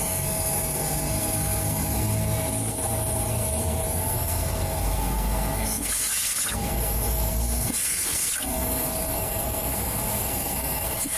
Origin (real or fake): fake